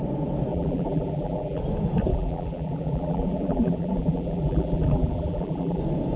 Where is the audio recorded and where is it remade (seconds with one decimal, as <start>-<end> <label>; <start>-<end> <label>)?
0.0-0.5 recorded; 0.5-1.6 remade; 1.6-2.1 recorded; 2.1-5.8 remade; 5.8-6.2 recorded

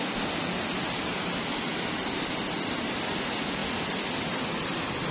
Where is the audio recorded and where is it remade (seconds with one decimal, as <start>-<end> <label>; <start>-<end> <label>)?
0.0-1.7 recorded; 1.7-2.3 remade; 2.3-3.6 recorded; 3.6-4.4 remade; 4.4-5.1 recorded

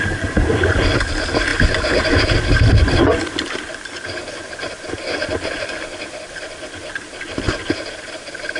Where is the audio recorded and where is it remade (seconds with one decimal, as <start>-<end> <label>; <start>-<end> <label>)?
0.0-1.5 recorded; 1.5-3.6 remade; 3.6-8.6 recorded

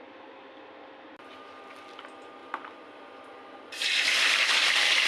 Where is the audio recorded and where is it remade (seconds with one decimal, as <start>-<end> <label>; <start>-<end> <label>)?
0.0-5.1 recorded